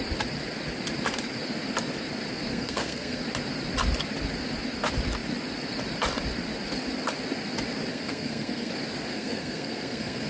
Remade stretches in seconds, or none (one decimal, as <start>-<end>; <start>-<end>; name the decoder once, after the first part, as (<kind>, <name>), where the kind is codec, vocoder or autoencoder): 2.5-3.2 (codec, SNAC); 7.9-8.7; 9.1-10.3

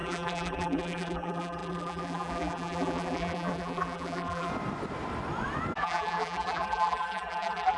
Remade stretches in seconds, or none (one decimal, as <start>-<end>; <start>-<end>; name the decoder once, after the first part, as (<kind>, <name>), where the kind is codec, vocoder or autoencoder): 0.0-4.5 (vocoder, BigVGAN v2); 5.8-7.8

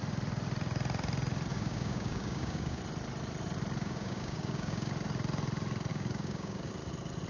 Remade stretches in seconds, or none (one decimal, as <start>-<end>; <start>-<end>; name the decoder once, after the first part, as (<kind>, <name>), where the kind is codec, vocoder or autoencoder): 1.5-2.8 (codec, DAC); 3.8-4.9; 5.9-6.7

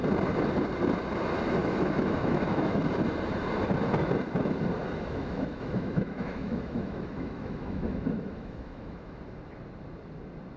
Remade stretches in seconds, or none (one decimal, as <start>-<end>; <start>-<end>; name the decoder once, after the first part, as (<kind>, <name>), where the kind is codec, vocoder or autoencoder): 1.6-2.8 (autoencoder, DAC-VAE); 4.8-9.2